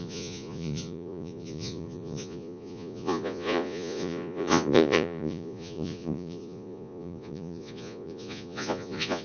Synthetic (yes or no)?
yes